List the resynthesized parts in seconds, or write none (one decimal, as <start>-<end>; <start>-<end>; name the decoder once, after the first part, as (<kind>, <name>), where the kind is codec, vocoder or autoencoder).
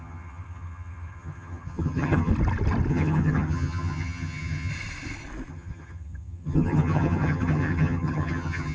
0.0-2.3 (vocoder, HiFi-GAN); 2.9-4.7; 5.5-8.7